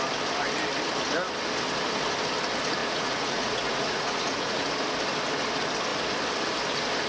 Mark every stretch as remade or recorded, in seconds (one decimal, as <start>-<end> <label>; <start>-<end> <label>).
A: 0.0-2.8 recorded; 2.8-4.7 remade; 4.7-7.1 recorded